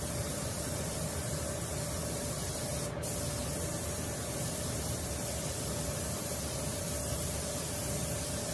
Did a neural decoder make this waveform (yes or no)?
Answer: no